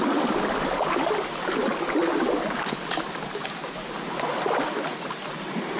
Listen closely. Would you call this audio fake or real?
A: real